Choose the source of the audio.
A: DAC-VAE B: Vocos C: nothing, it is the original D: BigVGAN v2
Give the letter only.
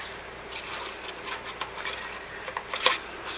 C